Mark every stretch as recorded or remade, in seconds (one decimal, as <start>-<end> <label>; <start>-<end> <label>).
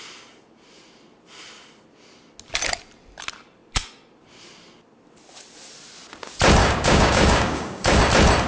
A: 0.0-6.6 recorded; 6.6-8.0 remade; 8.0-8.5 recorded